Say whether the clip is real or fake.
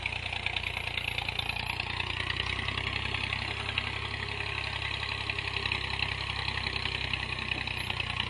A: real